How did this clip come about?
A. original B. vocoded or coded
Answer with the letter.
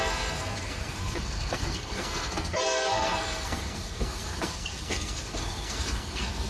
B